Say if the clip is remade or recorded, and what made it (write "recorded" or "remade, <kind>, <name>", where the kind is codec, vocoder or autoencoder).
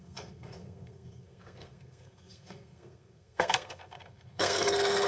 remade, codec, SNAC